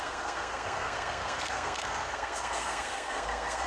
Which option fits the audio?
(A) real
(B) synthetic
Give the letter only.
B